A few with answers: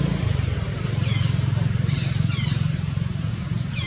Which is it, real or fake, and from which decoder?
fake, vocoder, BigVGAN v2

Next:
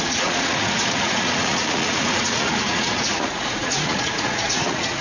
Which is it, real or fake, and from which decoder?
fake, vocoder, Vocos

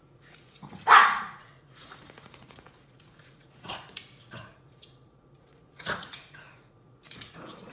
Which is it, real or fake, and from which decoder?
fake, vocoder, Vocos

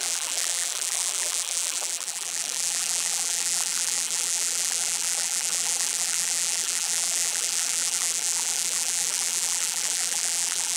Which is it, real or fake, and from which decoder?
fake, vocoder, BigVGAN v2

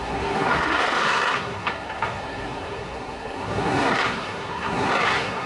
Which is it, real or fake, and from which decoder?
fake, codec, SNAC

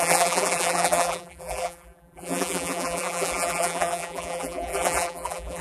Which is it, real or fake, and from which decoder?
fake, vocoder, BigVGAN v2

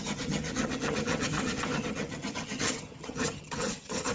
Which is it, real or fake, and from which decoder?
fake, vocoder, HiFi-GAN